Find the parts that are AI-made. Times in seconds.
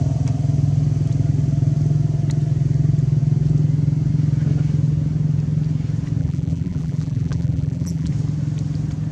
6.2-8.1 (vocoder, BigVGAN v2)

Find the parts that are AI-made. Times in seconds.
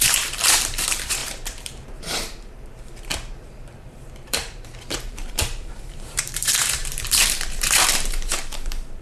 0.0-9.0 (vocoder, BigVGAN v2)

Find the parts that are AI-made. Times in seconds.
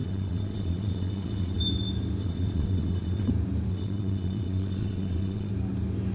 0.0-1.6 (vocoder, WaveNeXt); 2.2-3.3; 3.7-5.5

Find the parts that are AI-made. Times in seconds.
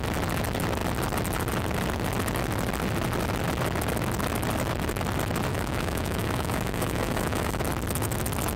5.5-7.6 (autoencoder, DAC-VAE)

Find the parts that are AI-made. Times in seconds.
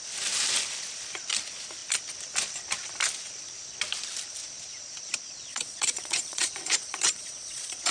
5.5-7.9 (vocoder, Vocos)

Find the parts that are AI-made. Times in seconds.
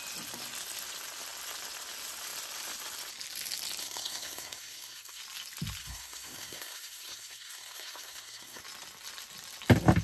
3.8-5.2 (codec, SNAC); 5.8-8.6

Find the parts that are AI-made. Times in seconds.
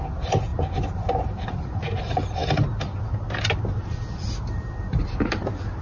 none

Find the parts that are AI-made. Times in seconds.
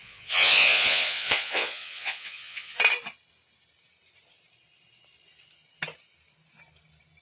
0.0-2.8 (vocoder, Vocos)